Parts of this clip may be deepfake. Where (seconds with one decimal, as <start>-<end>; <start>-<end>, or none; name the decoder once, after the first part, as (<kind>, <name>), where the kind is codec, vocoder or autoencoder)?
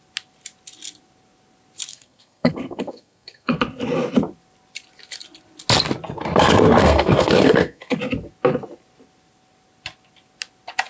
1.9-3.6 (codec, SNAC); 6.8-8.0